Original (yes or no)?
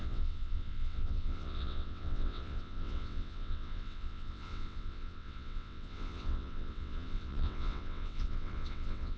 no